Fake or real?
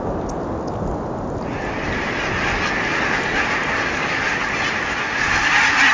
real